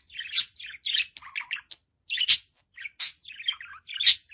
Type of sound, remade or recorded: recorded